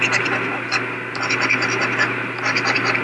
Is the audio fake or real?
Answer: real